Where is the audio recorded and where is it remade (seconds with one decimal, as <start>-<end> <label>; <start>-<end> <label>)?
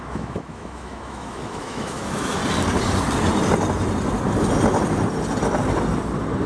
0.0-2.4 remade; 2.4-6.5 recorded